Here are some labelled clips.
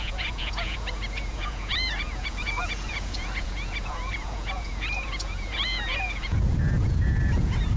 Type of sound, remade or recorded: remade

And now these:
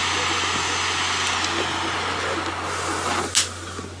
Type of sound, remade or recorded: recorded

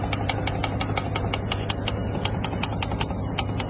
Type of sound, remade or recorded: recorded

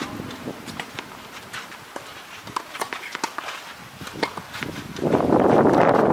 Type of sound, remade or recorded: recorded